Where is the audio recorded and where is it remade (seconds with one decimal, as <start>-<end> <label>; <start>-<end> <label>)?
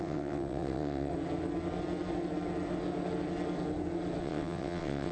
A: 0.0-1.1 remade; 1.1-4.2 recorded; 4.2-5.1 remade